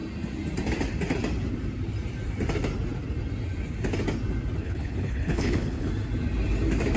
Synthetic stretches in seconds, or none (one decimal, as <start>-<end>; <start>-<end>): 4.6-5.9